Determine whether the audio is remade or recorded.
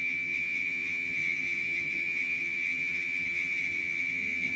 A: remade